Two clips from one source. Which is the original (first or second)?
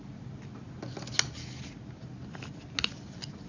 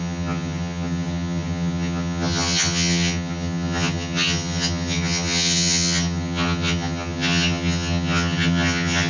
first